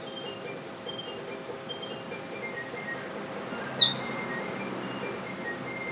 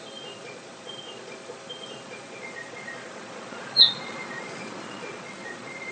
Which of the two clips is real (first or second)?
first